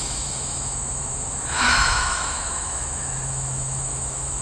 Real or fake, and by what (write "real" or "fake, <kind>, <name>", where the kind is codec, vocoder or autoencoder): fake, autoencoder, DAC-VAE